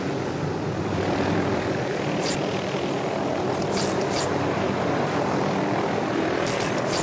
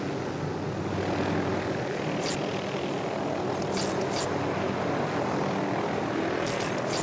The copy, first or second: first